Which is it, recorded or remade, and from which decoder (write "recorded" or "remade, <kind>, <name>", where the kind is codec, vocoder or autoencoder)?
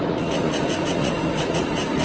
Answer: remade, vocoder, Vocos